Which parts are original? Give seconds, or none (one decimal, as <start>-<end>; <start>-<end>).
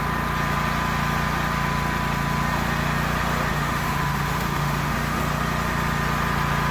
0.0-3.5; 5.2-6.7